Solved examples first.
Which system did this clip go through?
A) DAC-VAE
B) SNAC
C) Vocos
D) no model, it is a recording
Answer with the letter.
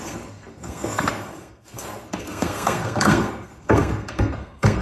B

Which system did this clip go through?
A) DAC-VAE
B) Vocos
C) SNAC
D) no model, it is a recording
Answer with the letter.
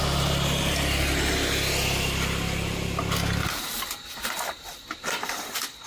D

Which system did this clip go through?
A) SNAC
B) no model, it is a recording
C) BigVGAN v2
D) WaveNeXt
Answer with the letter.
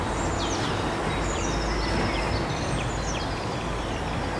B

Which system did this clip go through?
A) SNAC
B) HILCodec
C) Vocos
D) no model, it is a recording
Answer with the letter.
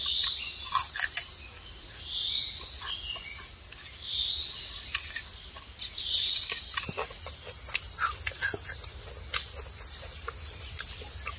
D